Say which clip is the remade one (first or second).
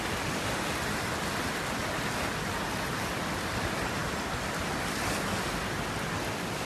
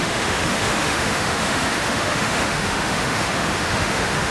second